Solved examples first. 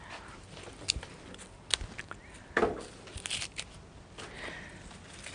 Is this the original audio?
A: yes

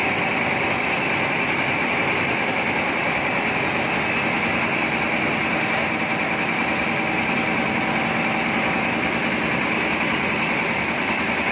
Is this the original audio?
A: yes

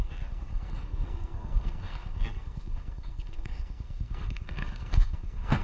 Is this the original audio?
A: no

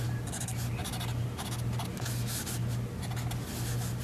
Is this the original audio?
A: yes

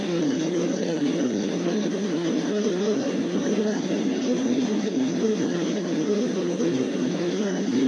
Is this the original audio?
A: no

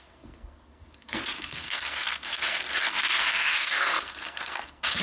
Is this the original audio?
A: no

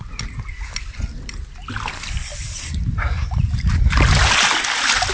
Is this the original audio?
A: yes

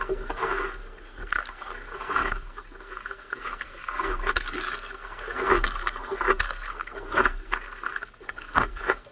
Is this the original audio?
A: no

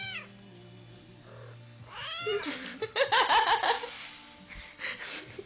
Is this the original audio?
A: yes